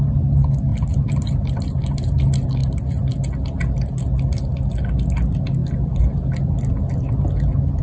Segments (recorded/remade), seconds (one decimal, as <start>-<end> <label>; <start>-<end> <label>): 0.0-0.7 recorded; 0.7-2.2 remade; 2.2-7.8 recorded